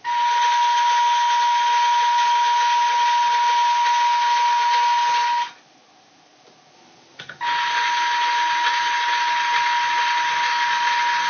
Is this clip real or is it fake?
real